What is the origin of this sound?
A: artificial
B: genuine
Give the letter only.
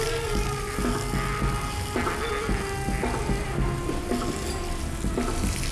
B